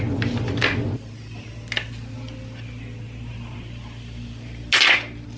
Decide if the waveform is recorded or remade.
recorded